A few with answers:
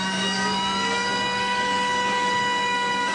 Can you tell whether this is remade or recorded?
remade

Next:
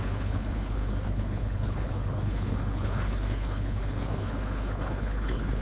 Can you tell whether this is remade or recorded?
remade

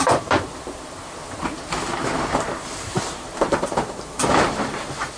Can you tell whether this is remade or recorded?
remade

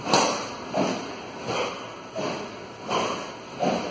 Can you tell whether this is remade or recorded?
recorded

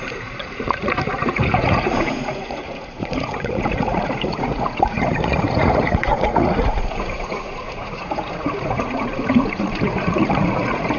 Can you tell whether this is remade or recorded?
remade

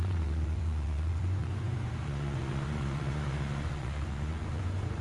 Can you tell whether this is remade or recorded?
remade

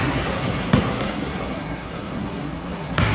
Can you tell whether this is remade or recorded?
remade